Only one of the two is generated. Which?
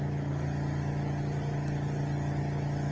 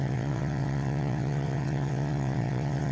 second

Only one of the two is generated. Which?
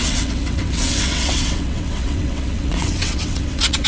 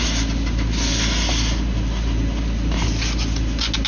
first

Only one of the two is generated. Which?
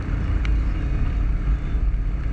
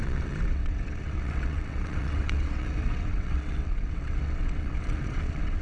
second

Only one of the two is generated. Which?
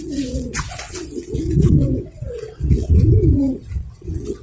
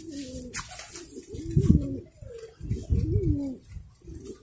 first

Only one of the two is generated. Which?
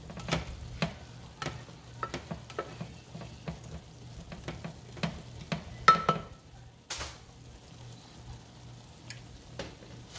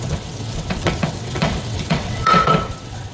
second